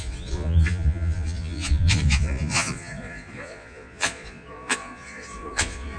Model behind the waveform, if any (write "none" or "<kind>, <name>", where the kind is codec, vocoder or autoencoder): vocoder, Vocos